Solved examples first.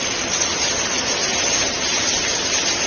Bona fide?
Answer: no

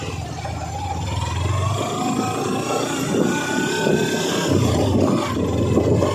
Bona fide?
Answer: yes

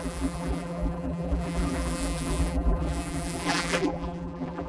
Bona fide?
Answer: no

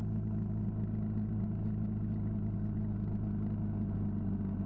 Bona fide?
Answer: yes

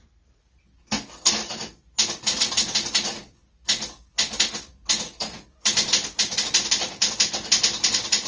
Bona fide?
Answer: yes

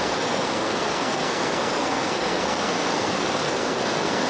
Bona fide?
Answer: no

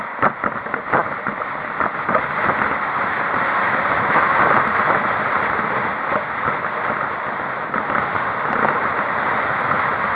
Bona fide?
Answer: yes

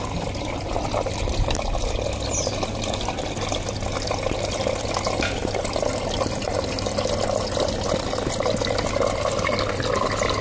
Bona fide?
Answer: yes